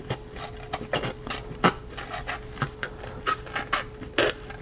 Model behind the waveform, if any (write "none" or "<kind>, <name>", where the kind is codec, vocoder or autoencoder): none